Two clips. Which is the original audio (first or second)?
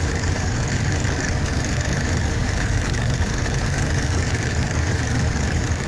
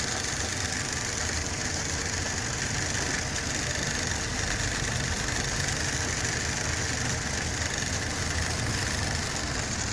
second